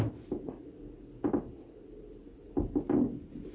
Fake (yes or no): no